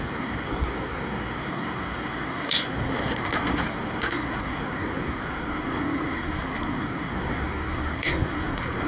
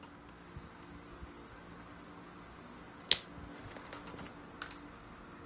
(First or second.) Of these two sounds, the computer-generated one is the first